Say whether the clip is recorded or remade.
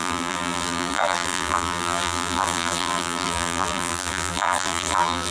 remade